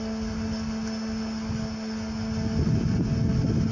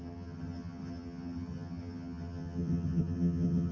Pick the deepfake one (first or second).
second